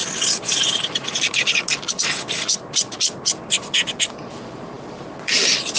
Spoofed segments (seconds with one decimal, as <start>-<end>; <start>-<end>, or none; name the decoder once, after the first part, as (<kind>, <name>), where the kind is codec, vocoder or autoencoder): none